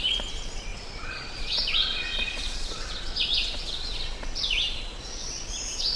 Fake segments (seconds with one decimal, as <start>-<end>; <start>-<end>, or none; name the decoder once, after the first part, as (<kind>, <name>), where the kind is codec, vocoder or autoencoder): 0.0-6.0 (vocoder, Vocos)